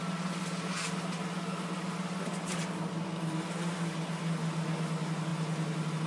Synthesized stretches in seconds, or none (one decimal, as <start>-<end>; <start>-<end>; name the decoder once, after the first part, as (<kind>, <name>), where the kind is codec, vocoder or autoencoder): none